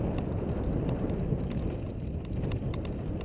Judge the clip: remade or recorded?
recorded